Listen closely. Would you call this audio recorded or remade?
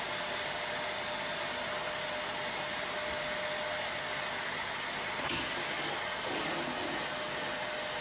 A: recorded